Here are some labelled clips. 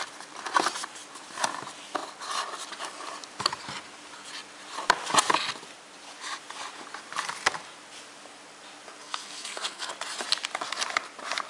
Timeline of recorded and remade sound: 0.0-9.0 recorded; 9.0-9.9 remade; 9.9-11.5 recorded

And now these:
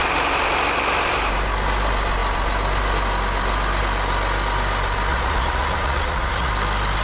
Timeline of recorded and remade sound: 0.0-5.1 recorded; 5.1-6.5 remade; 6.5-7.0 recorded

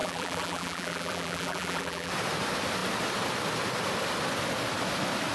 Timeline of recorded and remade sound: 0.0-2.1 remade; 2.1-5.3 recorded

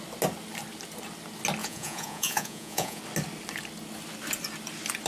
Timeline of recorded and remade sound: 0.0-1.6 recorded; 1.6-3.0 remade; 3.0-5.1 recorded

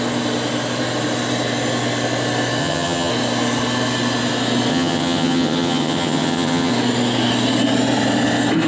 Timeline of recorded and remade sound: 0.0-2.6 recorded; 2.6-3.1 remade; 3.1-4.7 recorded; 4.7-6.7 remade; 6.7-8.7 recorded

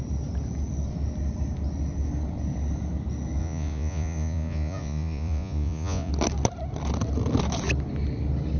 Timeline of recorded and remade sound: 0.0-3.4 recorded; 3.4-6.1 remade; 6.1-8.6 recorded

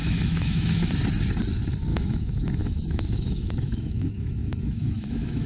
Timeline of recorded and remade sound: 0.0-0.9 remade; 0.9-1.9 recorded; 1.9-5.5 remade

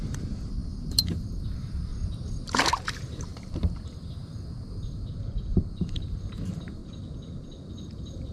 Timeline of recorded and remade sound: 0.0-1.9 remade; 1.9-2.6 recorded; 2.6-6.8 remade; 6.8-7.7 recorded; 7.7-8.3 remade